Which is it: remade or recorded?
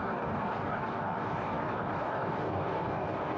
remade